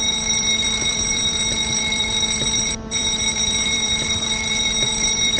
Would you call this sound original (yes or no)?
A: no